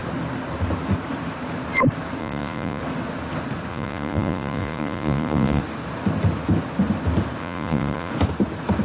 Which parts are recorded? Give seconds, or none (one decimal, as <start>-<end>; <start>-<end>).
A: 0.0-2.2; 2.8-3.7; 5.6-7.4; 8.1-8.8